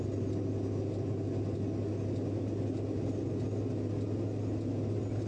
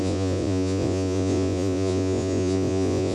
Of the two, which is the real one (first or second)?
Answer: first